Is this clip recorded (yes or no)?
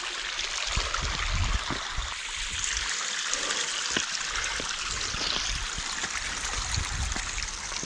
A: yes